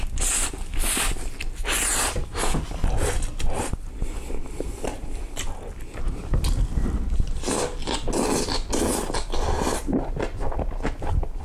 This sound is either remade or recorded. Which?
recorded